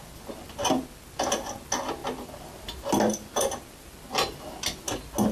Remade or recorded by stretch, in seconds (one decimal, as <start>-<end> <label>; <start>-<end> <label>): 0.0-5.3 recorded